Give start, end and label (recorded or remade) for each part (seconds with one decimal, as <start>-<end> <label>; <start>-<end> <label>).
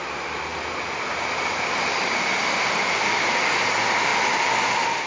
0.0-5.1 recorded